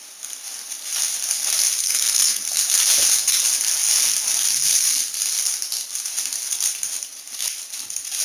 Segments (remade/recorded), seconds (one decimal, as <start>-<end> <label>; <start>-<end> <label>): 0.0-1.8 recorded; 1.8-2.4 remade; 2.4-8.2 recorded

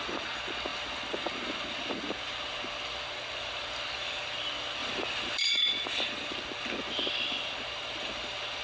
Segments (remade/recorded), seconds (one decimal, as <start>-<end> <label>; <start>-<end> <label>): 0.0-4.8 recorded; 4.8-5.4 remade; 5.4-8.6 recorded

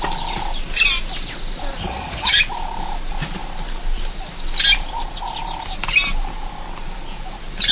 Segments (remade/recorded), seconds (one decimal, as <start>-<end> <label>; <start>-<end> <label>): 0.0-1.8 recorded; 1.8-2.4 remade; 2.4-7.7 recorded

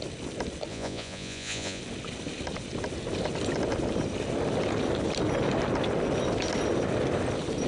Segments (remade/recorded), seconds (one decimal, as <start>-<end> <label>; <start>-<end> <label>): 0.0-0.7 recorded; 0.7-1.8 remade; 1.8-7.7 recorded